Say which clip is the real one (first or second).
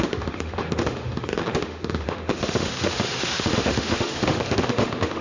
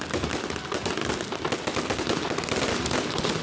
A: second